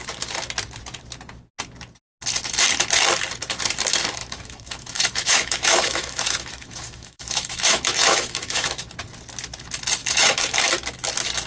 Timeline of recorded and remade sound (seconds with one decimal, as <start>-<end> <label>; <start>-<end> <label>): 0.0-4.2 recorded; 4.2-8.9 remade; 8.9-10.0 recorded; 10.0-10.7 remade; 10.7-11.5 recorded